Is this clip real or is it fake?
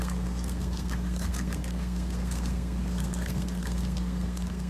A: fake